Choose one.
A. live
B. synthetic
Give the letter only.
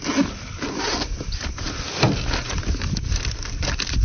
A